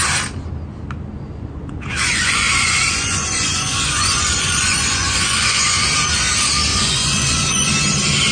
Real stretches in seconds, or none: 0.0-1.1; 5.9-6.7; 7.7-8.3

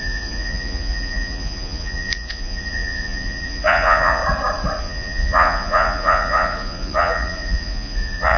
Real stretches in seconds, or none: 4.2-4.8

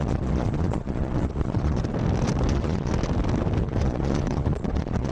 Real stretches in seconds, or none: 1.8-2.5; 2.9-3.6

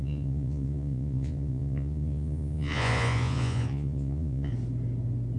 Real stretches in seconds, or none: 4.5-5.4

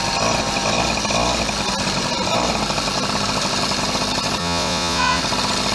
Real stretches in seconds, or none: 0.0-4.4; 5.2-5.7

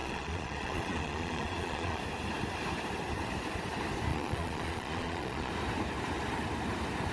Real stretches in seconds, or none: 2.0-4.1; 5.5-7.1